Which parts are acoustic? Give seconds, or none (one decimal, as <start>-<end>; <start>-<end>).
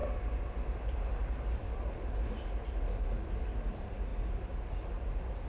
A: 0.0-5.5